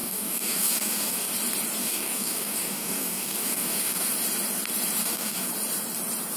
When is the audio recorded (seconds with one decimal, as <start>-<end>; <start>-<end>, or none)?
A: 1.3-1.8; 4.1-5.0; 5.5-6.4